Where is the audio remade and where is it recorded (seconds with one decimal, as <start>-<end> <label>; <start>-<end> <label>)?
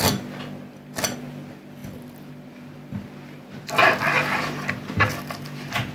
0.0-5.9 recorded